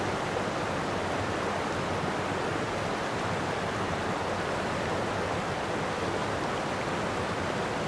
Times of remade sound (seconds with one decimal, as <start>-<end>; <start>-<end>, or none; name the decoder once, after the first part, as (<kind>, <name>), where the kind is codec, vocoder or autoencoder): none